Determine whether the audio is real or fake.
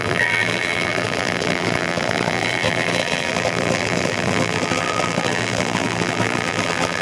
fake